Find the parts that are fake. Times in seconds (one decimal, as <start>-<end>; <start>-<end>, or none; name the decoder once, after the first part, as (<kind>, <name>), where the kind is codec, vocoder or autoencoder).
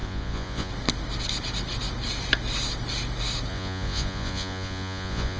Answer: 0.0-0.7 (vocoder, Vocos); 3.5-5.4